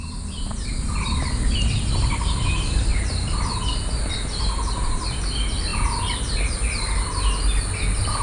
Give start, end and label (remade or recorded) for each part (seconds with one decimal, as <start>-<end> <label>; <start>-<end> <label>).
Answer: 0.0-8.2 recorded